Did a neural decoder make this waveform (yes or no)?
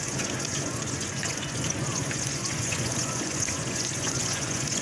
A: yes